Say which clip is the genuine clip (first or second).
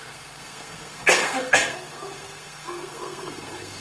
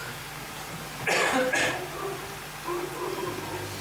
second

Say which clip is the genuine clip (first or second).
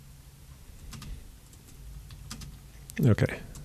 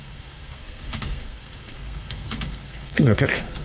first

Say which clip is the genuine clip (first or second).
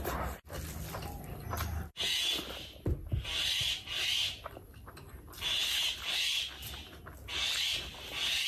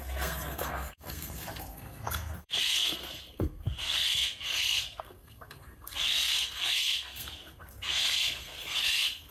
first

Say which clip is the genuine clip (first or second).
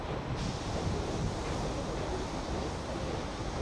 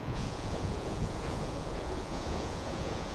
first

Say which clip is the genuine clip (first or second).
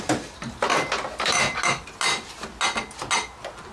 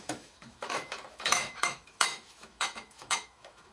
first